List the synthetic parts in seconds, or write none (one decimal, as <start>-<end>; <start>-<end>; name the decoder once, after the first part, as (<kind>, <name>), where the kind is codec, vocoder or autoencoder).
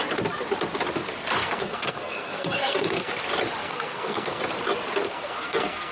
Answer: 1.4-3.1 (codec, SNAC); 3.6-4.4; 5.0-5.9